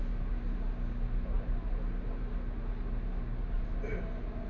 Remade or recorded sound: recorded